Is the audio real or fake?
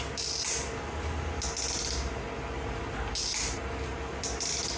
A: real